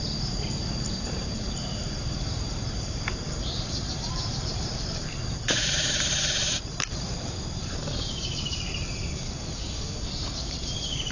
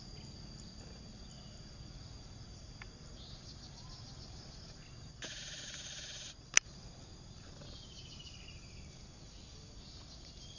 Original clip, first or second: second